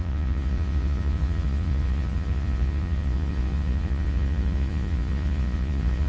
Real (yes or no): no